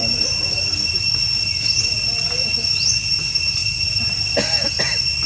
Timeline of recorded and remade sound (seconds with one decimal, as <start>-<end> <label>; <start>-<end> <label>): 0.0-5.3 recorded

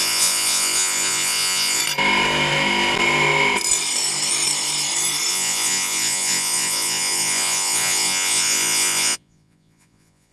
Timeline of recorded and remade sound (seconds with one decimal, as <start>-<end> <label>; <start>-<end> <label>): 0.0-1.8 remade; 1.8-5.3 recorded; 5.3-10.3 remade

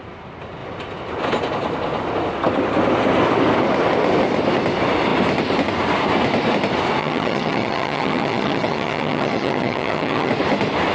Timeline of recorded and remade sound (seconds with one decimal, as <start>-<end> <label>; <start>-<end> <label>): 0.0-7.0 recorded; 7.0-10.3 remade; 10.3-10.9 recorded

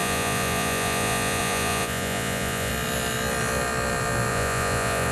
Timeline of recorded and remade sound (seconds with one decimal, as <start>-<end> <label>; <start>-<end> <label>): 0.0-2.7 remade; 2.7-4.3 recorded; 4.3-5.1 remade

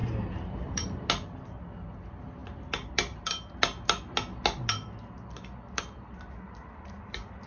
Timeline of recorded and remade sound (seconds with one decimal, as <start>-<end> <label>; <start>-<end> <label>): 0.0-1.1 remade; 1.1-7.5 recorded

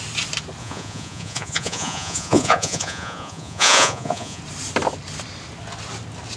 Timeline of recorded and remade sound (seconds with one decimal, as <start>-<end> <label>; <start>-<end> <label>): 0.0-0.6 recorded; 0.6-4.4 remade; 4.4-6.4 recorded